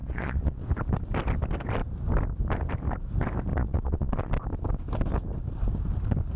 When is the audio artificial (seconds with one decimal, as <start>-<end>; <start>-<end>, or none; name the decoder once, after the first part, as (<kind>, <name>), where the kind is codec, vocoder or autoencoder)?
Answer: 0.0-0.6 (vocoder, Vocos); 3.5-4.3